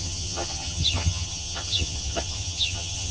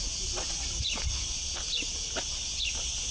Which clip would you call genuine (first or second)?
second